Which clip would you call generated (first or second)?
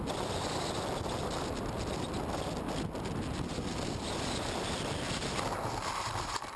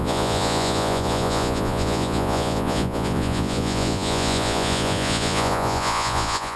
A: second